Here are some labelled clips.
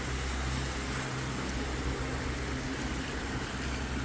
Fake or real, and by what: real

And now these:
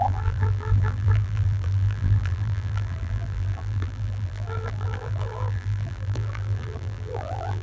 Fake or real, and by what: fake, vocoder, BigVGAN v2